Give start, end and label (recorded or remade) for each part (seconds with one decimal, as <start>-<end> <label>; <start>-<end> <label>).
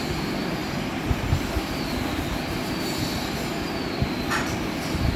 0.0-5.2 recorded